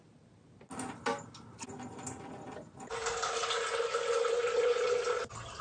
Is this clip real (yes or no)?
yes